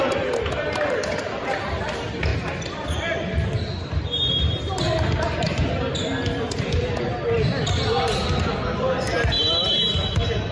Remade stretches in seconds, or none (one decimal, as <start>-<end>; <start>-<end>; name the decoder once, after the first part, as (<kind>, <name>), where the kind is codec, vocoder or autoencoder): none